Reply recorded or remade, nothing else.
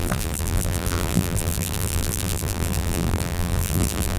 remade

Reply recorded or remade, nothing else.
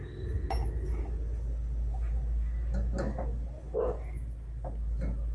recorded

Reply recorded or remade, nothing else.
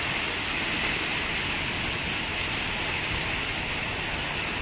recorded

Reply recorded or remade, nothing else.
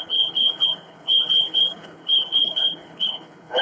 remade